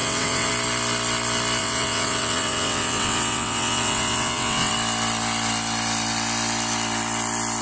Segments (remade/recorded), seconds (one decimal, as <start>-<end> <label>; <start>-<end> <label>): 0.0-0.5 remade; 0.5-1.6 recorded; 1.6-4.7 remade; 4.7-7.6 recorded